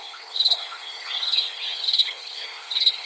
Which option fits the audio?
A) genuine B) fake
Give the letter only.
B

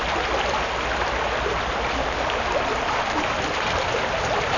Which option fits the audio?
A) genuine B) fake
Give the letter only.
A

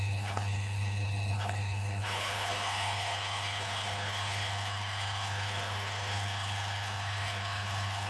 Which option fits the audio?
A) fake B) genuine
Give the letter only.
A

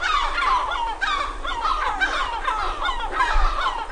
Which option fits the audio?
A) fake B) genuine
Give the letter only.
B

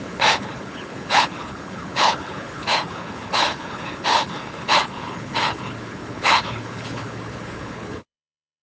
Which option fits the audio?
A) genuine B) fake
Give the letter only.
B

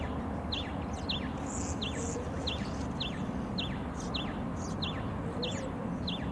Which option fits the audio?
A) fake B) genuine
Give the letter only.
B